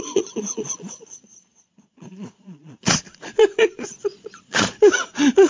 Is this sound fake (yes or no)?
yes